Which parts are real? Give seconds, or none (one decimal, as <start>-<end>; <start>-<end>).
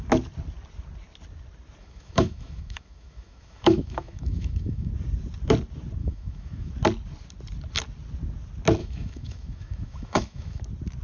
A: 0.0-1.8; 4.9-6.0; 6.7-8.8; 10.6-11.0